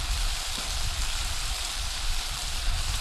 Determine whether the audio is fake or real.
fake